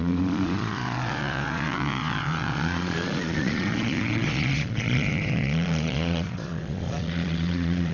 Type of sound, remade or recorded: remade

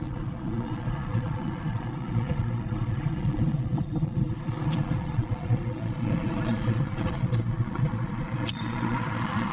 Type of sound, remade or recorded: remade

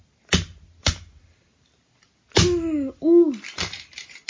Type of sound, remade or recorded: recorded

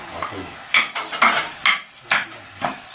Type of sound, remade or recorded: recorded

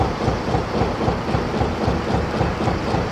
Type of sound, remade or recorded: recorded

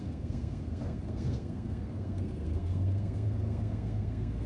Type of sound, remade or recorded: remade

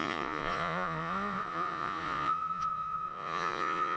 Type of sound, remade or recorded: remade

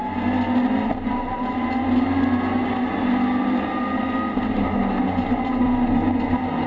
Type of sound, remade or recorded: recorded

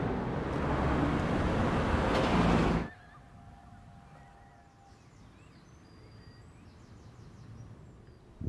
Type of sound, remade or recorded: recorded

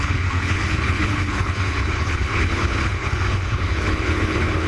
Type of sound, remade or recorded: remade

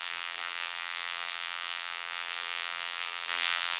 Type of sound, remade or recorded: remade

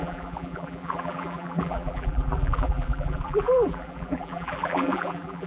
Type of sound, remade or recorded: remade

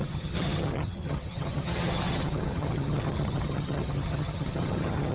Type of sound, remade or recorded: remade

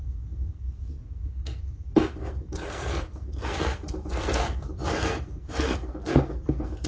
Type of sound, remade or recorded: remade